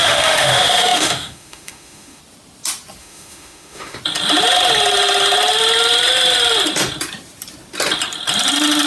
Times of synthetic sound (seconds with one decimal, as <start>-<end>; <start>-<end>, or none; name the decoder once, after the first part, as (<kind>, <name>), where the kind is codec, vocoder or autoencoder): 0.0-2.2 (autoencoder, DAC-VAE); 3.0-4.0